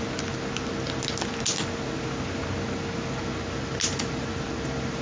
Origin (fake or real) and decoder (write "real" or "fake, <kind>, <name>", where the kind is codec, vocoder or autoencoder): real